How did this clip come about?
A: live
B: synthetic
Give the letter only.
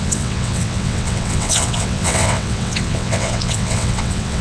B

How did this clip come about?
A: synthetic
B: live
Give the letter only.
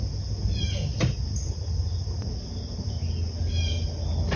B